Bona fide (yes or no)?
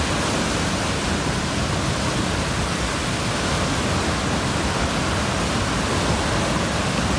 yes